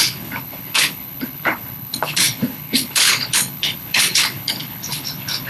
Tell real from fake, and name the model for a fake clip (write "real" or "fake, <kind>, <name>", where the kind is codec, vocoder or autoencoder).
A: fake, codec, HILCodec